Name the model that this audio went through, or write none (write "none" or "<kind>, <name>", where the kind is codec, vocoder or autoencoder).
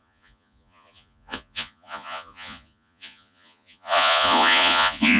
vocoder, Vocos